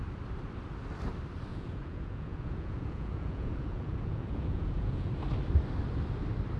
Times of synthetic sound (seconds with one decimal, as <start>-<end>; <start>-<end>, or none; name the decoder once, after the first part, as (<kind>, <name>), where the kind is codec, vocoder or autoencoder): 1.5-5.1 (vocoder, Vocos)